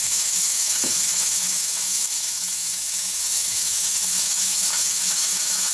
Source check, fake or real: fake